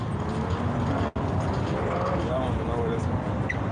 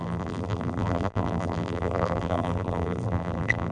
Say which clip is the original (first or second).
first